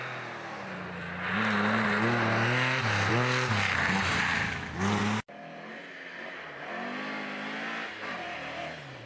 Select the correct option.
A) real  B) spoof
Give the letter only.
A